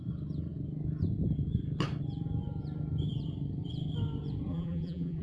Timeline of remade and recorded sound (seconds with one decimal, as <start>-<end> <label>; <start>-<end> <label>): 0.0-4.5 recorded; 4.5-5.2 remade